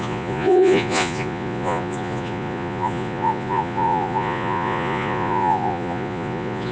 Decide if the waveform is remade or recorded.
remade